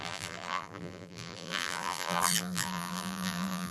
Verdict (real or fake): fake